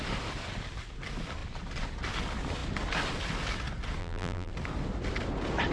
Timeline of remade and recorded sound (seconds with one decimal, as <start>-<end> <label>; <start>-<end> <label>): 0.0-4.0 recorded; 4.0-4.5 remade; 4.5-5.7 recorded